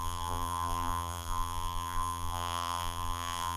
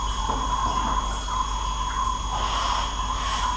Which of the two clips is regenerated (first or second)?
first